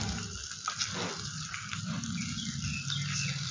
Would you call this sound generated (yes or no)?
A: no